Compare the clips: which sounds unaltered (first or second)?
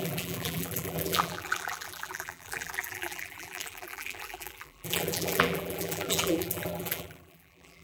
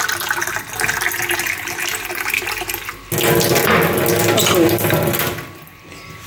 second